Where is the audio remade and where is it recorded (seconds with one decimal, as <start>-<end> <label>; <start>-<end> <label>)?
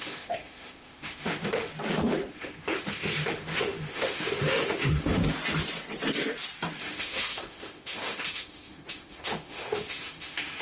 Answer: 0.0-1.7 remade; 1.7-2.3 recorded; 2.3-5.2 remade; 5.2-6.8 recorded; 6.8-10.6 remade